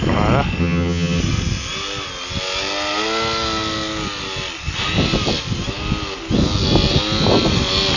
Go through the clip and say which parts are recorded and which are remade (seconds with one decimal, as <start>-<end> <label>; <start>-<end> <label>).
0.0-0.6 recorded; 0.6-1.2 remade; 1.2-8.0 recorded